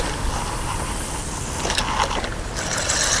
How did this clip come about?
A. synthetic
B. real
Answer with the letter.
B